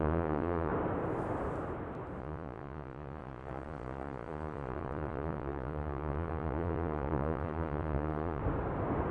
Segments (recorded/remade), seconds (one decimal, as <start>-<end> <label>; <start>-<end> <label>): 0.0-0.7 remade; 0.7-2.2 recorded; 2.2-8.4 remade; 8.4-9.1 recorded